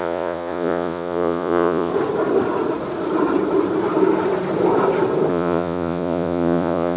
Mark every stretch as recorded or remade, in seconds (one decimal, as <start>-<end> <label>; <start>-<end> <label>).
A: 0.0-1.9 remade; 1.9-5.3 recorded; 5.3-7.0 remade